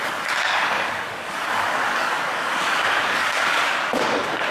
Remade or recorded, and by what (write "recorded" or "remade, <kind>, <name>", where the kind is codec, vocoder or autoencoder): remade, codec, DAC